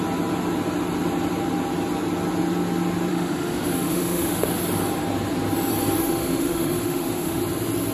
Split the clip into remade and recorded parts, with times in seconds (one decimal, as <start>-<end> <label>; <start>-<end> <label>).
0.0-3.1 recorded; 3.1-4.6 remade; 4.6-6.0 recorded; 6.0-7.4 remade; 7.4-7.9 recorded